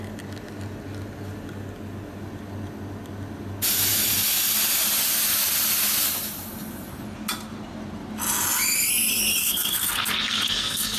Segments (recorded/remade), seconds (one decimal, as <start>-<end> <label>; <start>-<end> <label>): 0.0-9.4 recorded; 9.4-11.0 remade